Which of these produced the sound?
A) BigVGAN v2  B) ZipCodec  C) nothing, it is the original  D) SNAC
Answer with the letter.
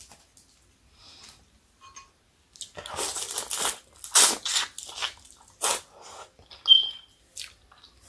C